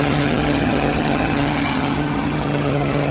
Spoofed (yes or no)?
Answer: yes